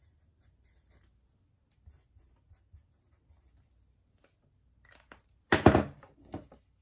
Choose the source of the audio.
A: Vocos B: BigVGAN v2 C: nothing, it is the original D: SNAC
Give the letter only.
C